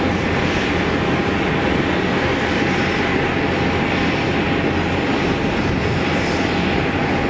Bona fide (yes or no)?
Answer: yes